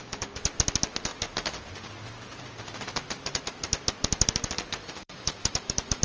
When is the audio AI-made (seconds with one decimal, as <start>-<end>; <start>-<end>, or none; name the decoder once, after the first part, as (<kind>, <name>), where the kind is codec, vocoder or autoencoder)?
4.8-6.0 (autoencoder, DAC-VAE)